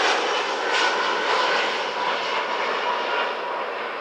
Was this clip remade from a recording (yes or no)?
no